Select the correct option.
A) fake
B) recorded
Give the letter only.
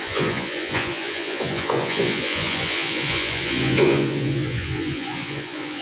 A